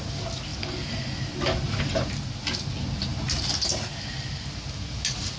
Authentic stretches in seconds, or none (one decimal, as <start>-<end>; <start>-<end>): 0.0-5.4